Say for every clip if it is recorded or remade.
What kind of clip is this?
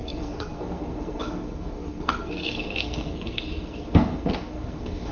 remade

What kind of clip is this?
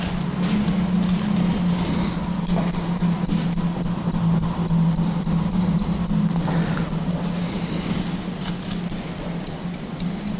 recorded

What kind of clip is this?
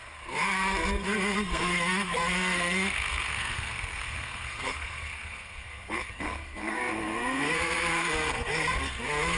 remade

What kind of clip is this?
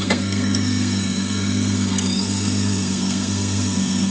remade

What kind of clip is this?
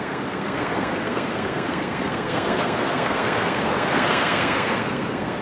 remade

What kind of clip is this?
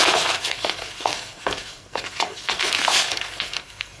remade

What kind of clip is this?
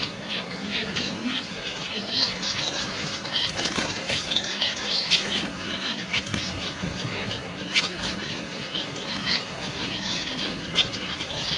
remade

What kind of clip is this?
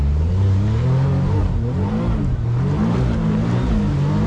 recorded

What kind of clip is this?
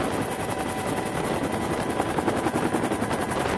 recorded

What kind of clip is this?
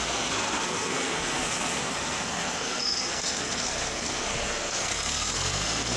remade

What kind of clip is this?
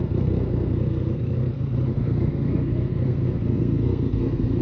remade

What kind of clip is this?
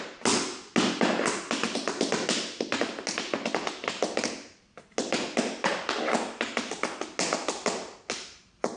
recorded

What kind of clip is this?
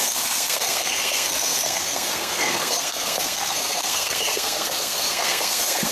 remade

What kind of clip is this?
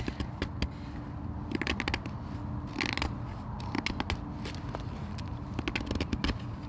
recorded